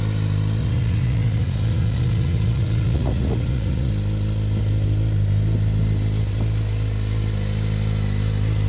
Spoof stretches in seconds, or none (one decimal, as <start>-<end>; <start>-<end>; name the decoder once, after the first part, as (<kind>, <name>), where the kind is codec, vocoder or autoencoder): 0.6-3.9 (vocoder, Vocos)